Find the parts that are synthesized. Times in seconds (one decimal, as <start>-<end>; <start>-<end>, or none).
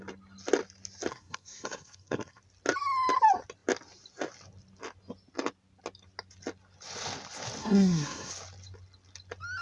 1.1-2.4; 7.6-8.3